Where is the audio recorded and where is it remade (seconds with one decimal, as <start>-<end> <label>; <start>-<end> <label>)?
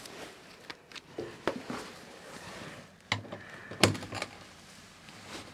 0.0-5.5 recorded